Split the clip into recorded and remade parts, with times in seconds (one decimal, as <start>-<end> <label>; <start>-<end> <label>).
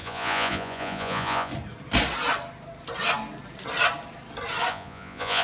0.0-1.5 remade; 1.5-4.7 recorded; 4.7-5.4 remade